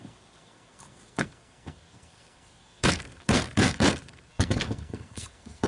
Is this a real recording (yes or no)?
no